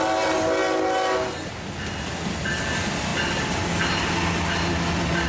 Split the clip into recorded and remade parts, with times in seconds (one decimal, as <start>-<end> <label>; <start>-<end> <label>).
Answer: 0.0-5.3 recorded